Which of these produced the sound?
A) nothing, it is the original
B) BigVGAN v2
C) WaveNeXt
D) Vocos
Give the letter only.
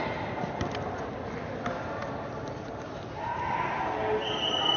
A